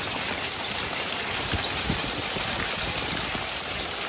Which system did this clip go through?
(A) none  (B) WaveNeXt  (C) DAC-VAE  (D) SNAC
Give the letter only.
A